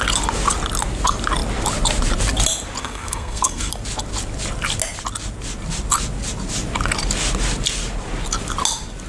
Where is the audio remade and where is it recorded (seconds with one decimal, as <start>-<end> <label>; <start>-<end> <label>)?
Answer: 0.0-2.8 recorded; 2.8-3.7 remade; 3.7-9.1 recorded